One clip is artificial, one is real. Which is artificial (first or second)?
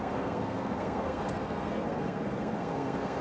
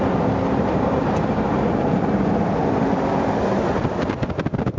first